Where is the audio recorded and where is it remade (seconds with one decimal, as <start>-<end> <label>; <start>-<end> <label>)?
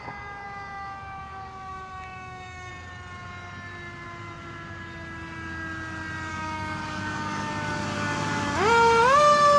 0.0-2.7 remade; 2.7-6.3 recorded; 6.3-7.5 remade; 7.5-9.6 recorded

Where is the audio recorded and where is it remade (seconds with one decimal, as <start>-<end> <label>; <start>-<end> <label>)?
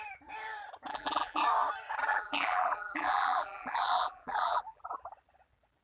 0.0-0.9 recorded; 0.9-1.4 remade; 1.4-2.1 recorded; 2.1-4.8 remade; 4.8-5.8 recorded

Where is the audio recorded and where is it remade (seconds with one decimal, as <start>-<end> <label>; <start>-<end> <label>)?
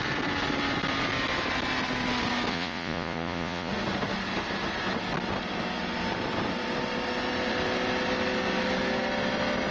0.0-2.5 recorded; 2.5-3.7 remade; 3.7-9.7 recorded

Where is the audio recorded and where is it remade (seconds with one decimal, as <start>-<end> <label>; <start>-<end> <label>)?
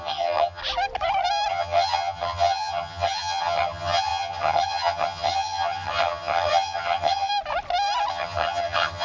0.0-0.6 remade; 0.6-1.5 recorded; 1.5-7.3 remade; 7.3-8.1 recorded; 8.1-9.0 remade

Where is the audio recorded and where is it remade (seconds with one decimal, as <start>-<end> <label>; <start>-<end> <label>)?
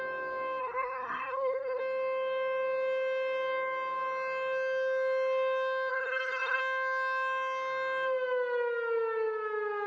0.0-0.6 recorded; 0.6-1.8 remade; 1.8-5.9 recorded; 5.9-6.6 remade; 6.6-9.9 recorded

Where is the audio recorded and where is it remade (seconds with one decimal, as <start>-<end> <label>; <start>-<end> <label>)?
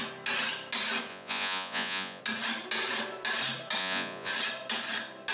0.0-1.1 recorded; 1.1-2.2 remade; 2.2-3.8 recorded; 3.8-4.3 remade; 4.3-5.3 recorded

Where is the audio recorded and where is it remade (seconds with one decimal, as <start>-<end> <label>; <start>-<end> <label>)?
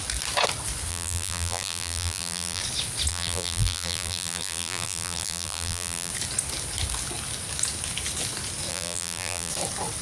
0.0-0.9 recorded; 0.9-2.6 remade; 2.6-3.1 recorded; 3.1-6.1 remade; 6.1-8.7 recorded; 8.7-9.5 remade; 9.5-10.0 recorded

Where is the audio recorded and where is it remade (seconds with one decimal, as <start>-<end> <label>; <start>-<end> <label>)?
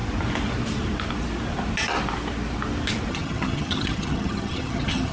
0.0-3.1 recorded; 3.1-5.1 remade